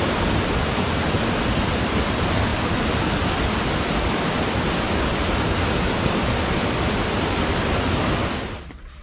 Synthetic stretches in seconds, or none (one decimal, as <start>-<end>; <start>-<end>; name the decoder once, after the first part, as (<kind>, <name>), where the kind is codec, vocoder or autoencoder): none